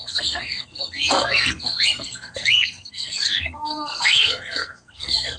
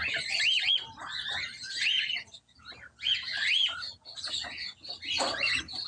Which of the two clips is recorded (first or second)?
second